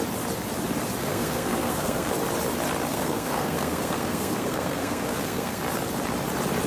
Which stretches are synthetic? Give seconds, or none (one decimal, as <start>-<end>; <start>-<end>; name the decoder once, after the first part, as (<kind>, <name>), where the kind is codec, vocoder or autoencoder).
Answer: 1.0-2.1 (codec, SNAC); 2.9-5.6